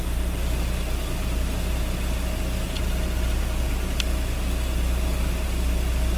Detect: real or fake real